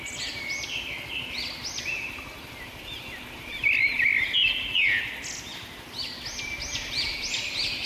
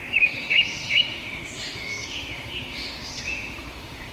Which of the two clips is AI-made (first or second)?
second